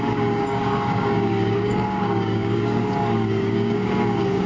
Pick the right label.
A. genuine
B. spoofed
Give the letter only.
B